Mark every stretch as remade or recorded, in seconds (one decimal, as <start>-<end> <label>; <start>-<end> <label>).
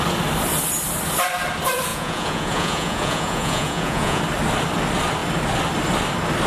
0.0-1.9 recorded; 1.9-4.2 remade; 4.2-6.5 recorded